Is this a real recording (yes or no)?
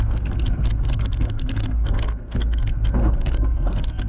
no